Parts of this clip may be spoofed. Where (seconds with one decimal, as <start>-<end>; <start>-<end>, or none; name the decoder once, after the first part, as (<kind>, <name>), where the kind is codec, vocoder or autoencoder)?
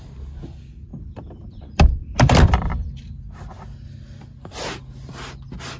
0.9-3.5 (vocoder, BigVGAN v2)